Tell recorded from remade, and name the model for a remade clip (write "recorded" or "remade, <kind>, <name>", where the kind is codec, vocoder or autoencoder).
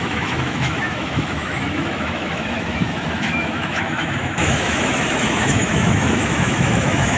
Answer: remade, autoencoder, DAC-VAE